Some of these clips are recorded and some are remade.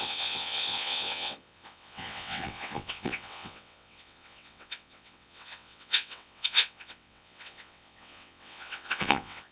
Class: remade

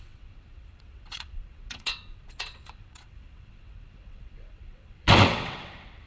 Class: remade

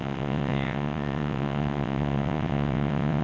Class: remade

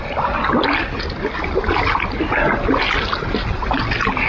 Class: recorded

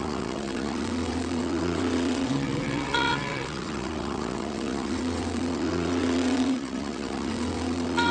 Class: remade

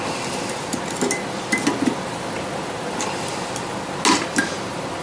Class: recorded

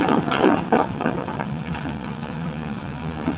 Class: remade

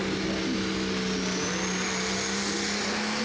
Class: recorded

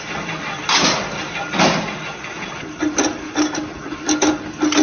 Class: recorded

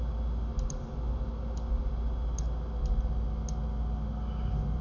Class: recorded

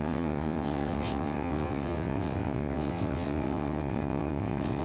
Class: remade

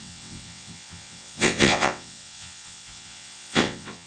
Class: remade